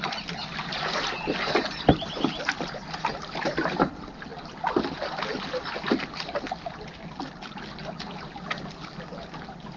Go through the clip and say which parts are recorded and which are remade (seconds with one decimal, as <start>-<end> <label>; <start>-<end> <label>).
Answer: 0.0-9.8 recorded